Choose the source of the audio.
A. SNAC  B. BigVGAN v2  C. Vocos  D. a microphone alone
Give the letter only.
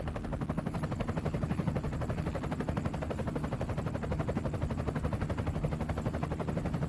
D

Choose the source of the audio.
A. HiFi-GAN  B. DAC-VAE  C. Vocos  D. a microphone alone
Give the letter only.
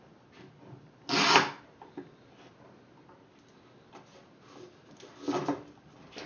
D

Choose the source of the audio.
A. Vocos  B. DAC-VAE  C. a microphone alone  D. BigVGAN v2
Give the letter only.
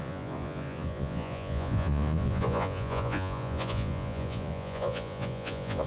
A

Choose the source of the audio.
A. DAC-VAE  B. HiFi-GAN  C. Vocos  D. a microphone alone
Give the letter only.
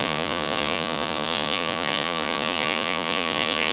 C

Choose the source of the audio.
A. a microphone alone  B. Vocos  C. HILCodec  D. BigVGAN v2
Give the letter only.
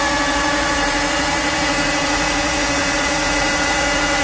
B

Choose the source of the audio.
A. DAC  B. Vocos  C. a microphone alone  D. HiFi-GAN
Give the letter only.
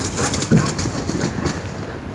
C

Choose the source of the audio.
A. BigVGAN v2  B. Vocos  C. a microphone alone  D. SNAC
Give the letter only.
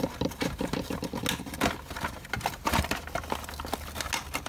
C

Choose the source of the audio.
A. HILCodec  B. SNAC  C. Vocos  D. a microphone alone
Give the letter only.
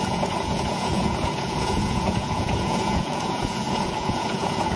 C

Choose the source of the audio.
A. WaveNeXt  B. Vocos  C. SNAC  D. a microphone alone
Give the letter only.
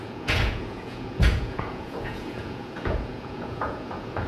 B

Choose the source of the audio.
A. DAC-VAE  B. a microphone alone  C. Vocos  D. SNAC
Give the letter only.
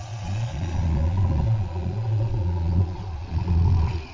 C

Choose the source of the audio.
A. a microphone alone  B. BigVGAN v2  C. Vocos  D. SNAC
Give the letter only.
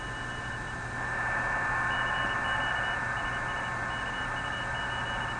A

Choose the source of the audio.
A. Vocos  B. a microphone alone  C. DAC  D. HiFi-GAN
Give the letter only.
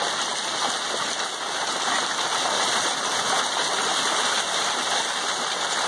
B